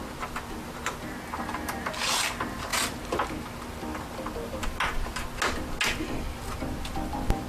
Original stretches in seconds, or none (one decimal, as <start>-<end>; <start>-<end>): 0.0-7.5